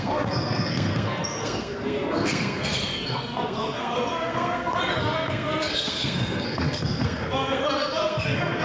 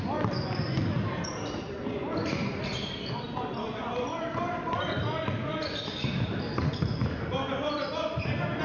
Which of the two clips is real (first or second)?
second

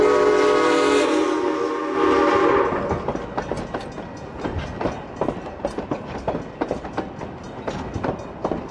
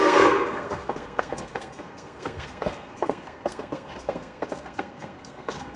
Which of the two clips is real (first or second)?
first